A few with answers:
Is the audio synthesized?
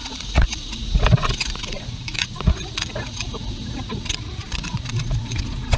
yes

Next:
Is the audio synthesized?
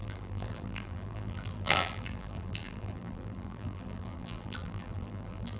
yes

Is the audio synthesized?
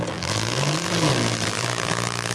yes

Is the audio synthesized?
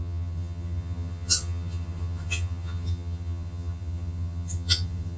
yes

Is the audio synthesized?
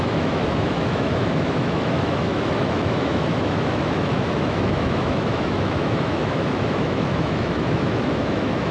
yes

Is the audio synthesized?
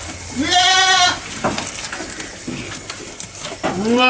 no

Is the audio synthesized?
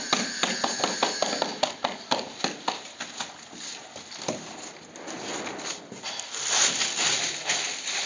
no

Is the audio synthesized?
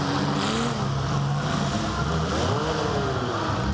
no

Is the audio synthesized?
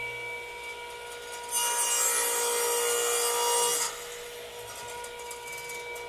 no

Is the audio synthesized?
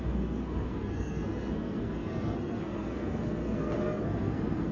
yes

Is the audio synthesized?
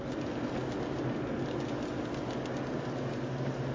no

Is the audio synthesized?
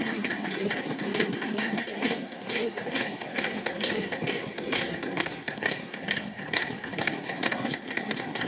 yes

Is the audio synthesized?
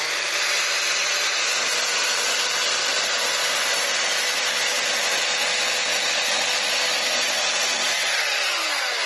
no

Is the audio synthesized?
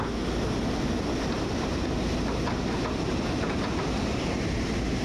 no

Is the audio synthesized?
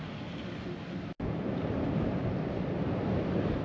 no